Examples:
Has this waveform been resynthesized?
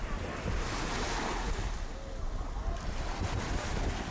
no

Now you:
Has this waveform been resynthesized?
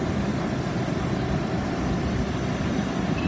no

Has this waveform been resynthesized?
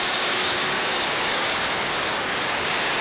yes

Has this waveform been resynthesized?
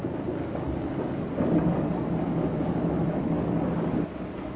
yes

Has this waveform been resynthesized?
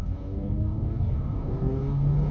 yes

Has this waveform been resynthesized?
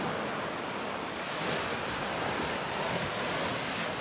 no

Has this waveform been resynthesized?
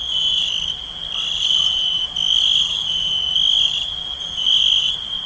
no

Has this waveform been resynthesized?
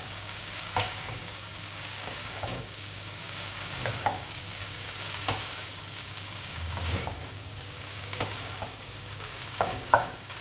yes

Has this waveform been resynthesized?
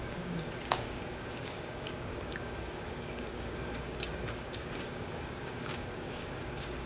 yes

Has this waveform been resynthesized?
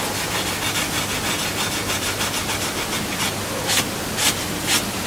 no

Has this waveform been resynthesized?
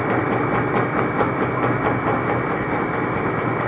no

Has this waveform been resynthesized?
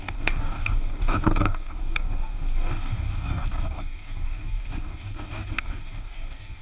yes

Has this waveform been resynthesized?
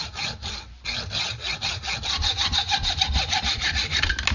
no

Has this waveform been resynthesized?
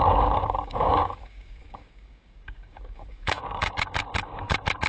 yes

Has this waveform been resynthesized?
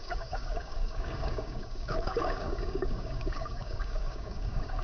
yes